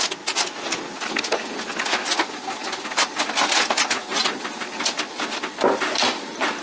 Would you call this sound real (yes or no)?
yes